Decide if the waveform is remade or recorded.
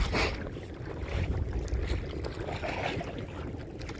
recorded